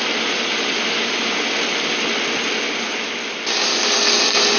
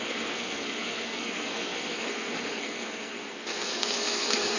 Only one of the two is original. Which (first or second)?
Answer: first